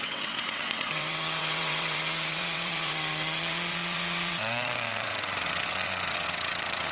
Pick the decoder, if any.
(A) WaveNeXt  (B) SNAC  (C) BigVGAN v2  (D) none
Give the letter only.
A